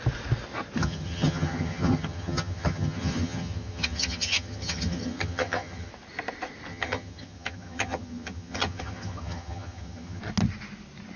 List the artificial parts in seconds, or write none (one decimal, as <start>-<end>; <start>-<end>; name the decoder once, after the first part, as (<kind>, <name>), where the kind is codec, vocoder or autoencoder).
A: 0.8-5.9 (vocoder, HiFi-GAN); 6.7-10.2